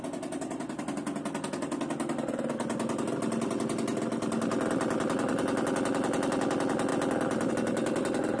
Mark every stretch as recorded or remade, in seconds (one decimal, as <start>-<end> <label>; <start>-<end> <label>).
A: 0.0-8.4 recorded